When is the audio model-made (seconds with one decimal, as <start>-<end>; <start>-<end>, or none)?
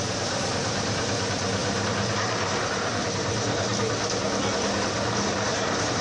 0.0-3.7; 5.3-6.0